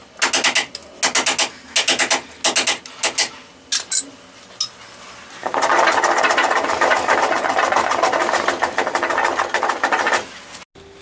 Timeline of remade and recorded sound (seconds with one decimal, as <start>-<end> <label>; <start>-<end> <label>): 0.0-11.0 recorded